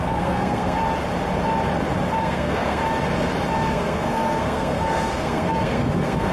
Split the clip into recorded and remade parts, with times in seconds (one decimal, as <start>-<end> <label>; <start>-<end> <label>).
0.0-0.8 remade; 0.8-2.2 recorded; 2.2-2.8 remade; 2.8-3.7 recorded; 3.7-6.3 remade